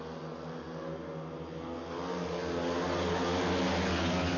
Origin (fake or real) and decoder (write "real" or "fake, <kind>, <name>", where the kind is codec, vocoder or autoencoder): real